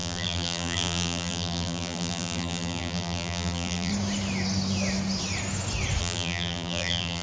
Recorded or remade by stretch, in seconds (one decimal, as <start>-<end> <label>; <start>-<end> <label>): 0.0-3.9 remade; 3.9-6.0 recorded; 6.0-7.2 remade